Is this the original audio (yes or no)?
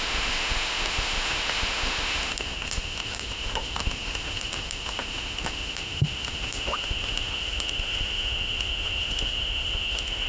no